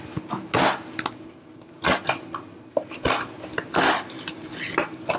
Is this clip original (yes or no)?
yes